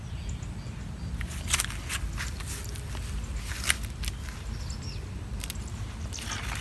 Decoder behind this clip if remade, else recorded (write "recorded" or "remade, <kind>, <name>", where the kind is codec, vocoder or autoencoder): recorded